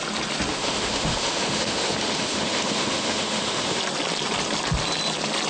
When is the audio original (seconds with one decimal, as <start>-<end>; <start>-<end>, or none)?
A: 0.0-0.5; 3.8-5.5